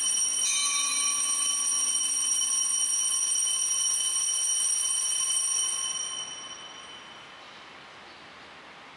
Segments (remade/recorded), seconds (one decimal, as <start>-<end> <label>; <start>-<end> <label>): 0.0-0.6 recorded; 0.6-2.1 remade; 2.1-9.0 recorded